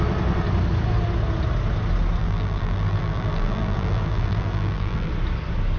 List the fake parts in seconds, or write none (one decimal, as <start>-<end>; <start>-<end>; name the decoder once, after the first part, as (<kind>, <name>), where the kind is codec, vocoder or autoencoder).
2.2-5.1 (vocoder, BigVGAN v2)

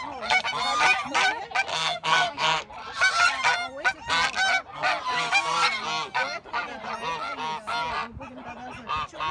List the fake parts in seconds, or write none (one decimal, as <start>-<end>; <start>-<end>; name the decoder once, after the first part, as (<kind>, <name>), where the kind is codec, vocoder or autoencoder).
1.7-2.7 (codec, SNAC)

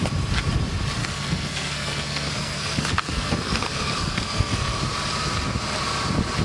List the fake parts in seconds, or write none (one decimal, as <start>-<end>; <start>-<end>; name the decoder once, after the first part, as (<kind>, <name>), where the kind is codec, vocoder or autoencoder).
1.0-4.8 (codec, SNAC)